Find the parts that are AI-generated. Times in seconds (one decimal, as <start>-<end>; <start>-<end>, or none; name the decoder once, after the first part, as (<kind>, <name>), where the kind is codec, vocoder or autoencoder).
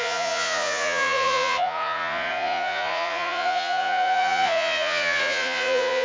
0.0-6.0 (vocoder, Vocos)